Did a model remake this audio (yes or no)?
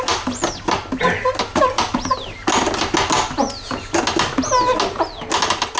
no